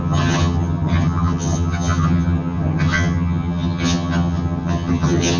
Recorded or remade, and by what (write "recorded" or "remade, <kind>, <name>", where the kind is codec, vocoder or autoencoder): remade, vocoder, HiFi-GAN